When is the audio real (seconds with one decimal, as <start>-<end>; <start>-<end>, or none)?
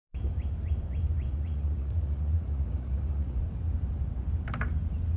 0.0-1.3; 3.4-5.2